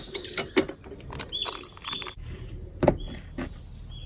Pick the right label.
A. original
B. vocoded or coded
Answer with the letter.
A